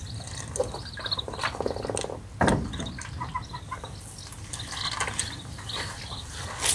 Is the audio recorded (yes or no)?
yes